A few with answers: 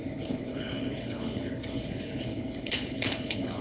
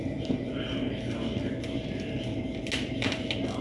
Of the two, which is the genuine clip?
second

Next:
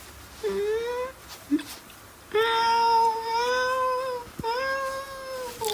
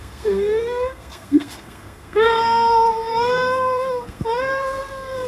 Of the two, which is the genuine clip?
first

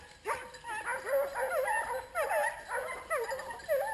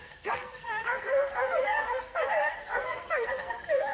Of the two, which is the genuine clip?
first